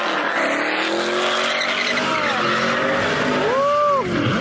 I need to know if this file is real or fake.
real